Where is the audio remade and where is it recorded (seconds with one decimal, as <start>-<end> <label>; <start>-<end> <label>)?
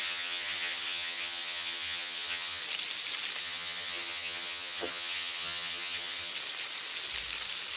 0.0-2.6 remade; 2.6-3.4 recorded; 3.4-6.3 remade; 6.3-7.8 recorded